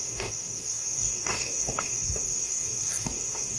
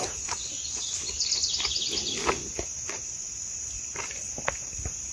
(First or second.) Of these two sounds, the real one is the second